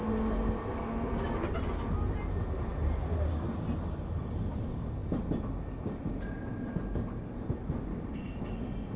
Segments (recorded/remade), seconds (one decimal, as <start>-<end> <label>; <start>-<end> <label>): 0.0-9.0 recorded